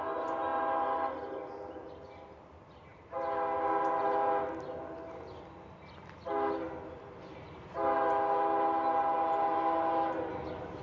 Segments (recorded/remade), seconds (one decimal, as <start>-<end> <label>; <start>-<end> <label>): 0.0-10.8 recorded

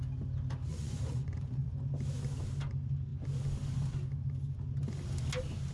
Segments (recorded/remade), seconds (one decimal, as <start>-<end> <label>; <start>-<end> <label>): 0.0-0.7 recorded; 0.7-1.7 remade; 1.7-5.7 recorded

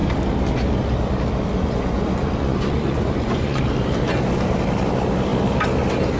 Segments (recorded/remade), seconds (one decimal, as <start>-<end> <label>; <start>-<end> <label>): 0.0-1.6 recorded; 1.6-3.6 remade; 3.6-6.2 recorded

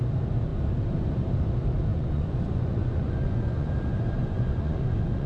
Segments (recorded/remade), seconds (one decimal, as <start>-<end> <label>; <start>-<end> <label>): 0.0-1.9 recorded; 1.9-3.7 remade; 3.7-4.2 recorded; 4.2-5.3 remade

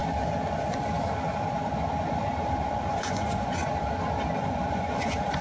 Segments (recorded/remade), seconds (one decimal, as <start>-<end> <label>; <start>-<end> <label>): 0.0-2.9 recorded; 2.9-3.6 remade; 3.6-4.4 recorded; 4.4-5.4 remade

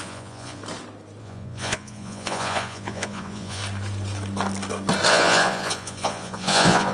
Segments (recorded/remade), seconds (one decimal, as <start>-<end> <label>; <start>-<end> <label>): 0.0-0.6 remade; 0.6-1.2 recorded; 1.2-3.6 remade; 3.6-5.1 recorded; 5.1-6.9 remade

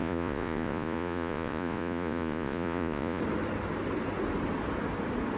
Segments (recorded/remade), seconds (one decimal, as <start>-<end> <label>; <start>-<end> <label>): 0.0-3.2 remade; 3.2-5.4 recorded

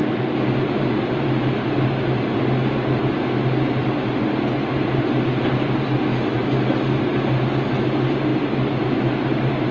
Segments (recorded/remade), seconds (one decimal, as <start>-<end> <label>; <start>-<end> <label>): 0.0-9.7 recorded